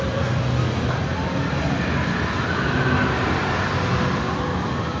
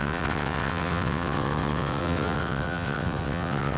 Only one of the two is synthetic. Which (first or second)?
second